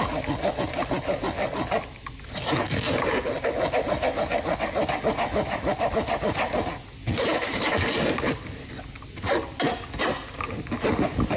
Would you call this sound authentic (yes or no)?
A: yes